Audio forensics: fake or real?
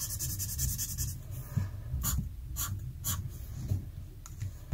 real